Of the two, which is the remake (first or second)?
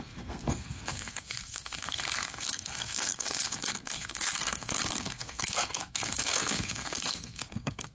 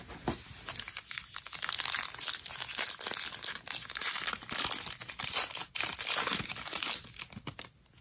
first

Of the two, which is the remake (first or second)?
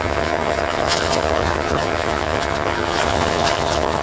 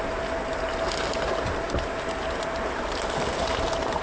first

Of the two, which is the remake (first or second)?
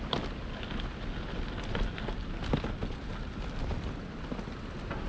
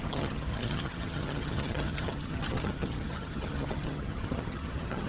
second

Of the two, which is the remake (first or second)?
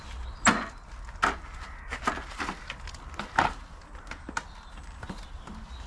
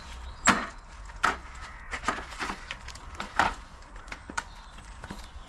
second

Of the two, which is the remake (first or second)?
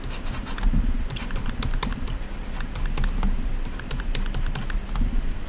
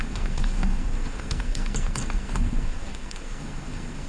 second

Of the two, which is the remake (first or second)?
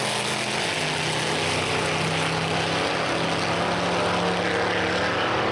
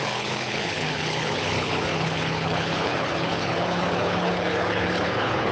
second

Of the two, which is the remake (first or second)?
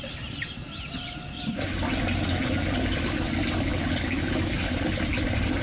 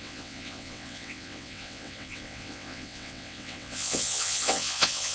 second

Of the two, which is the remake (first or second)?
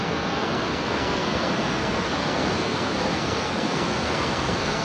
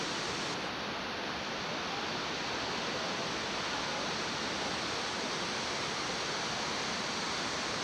first